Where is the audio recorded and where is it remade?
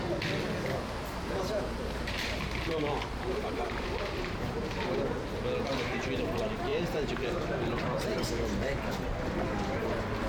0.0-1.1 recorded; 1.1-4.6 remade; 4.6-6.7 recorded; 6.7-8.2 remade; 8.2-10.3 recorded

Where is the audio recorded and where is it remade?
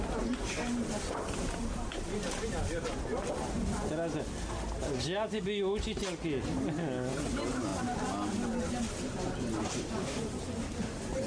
0.0-11.3 recorded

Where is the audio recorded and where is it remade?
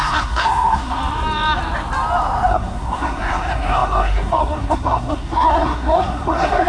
0.0-1.0 remade; 1.0-2.5 recorded; 2.5-6.7 remade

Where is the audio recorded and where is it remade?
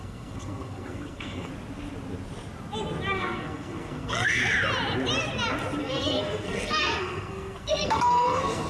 0.0-1.5 remade; 1.5-3.1 recorded; 3.1-4.4 remade; 4.4-5.8 recorded; 5.8-8.7 remade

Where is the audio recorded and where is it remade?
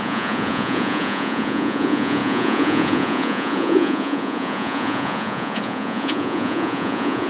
0.0-7.3 remade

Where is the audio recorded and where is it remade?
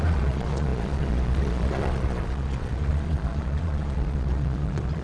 0.0-5.0 remade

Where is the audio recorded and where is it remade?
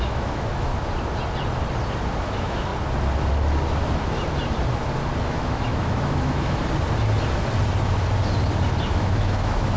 0.0-0.7 remade; 0.7-2.2 recorded; 2.2-2.7 remade; 2.7-5.2 recorded; 5.2-6.6 remade; 6.6-9.0 recorded; 9.0-9.8 remade